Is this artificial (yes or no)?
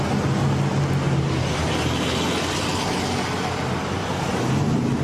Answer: no